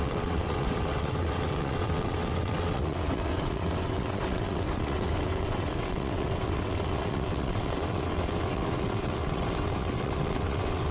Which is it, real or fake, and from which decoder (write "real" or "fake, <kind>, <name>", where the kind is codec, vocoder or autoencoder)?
fake, vocoder, WaveNeXt